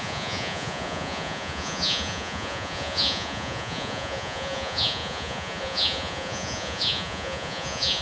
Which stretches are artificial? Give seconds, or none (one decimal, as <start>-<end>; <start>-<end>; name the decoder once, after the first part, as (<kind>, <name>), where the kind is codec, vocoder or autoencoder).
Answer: 0.0-8.0 (vocoder, Vocos)